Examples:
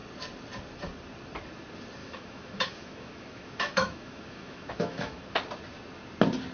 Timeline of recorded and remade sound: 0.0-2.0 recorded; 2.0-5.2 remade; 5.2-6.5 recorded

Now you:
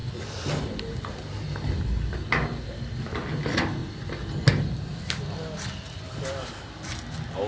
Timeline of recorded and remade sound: 0.0-7.5 recorded

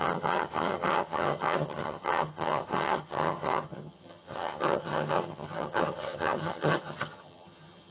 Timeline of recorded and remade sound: 0.0-7.9 remade

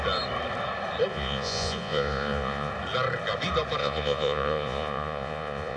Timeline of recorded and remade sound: 0.0-1.1 recorded; 1.1-2.7 remade; 2.7-3.8 recorded; 3.8-5.8 remade

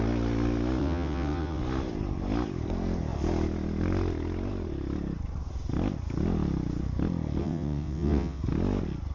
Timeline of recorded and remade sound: 0.0-0.8 recorded; 0.8-1.6 remade; 1.6-7.4 recorded; 7.4-8.4 remade; 8.4-9.1 recorded

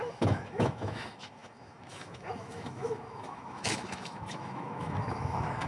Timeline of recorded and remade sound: 0.0-5.7 remade

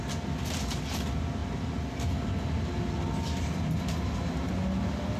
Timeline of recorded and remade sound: 0.0-5.2 recorded